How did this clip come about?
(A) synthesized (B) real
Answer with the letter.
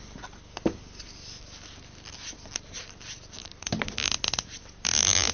A